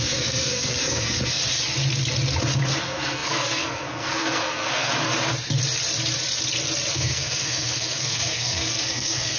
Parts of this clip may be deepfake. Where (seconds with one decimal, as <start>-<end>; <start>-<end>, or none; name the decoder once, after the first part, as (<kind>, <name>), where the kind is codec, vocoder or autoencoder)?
0.0-1.4 (codec, SNAC); 2.8-4.9; 6.9-9.4